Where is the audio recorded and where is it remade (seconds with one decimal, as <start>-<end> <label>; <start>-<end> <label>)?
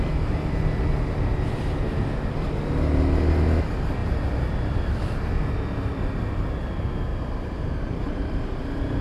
0.0-4.0 recorded; 4.0-4.6 remade; 4.6-7.1 recorded; 7.1-8.4 remade; 8.4-9.0 recorded